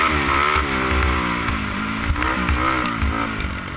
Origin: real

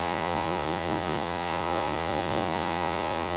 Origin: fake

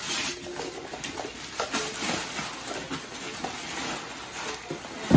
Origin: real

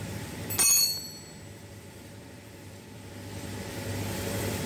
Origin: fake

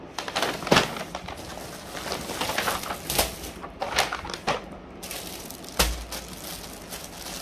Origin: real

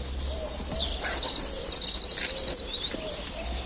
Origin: real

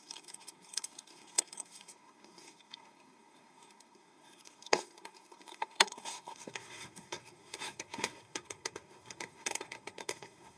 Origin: fake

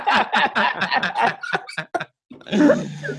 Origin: real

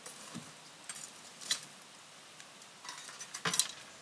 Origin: real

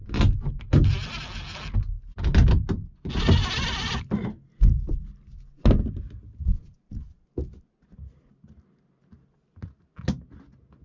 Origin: real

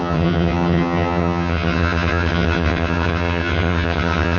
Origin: fake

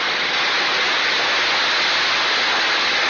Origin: real